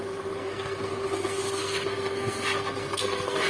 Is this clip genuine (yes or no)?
no